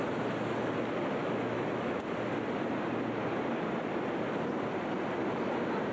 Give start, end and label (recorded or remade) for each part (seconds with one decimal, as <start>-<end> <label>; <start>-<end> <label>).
0.0-1.2 recorded; 1.2-2.0 remade; 2.0-5.9 recorded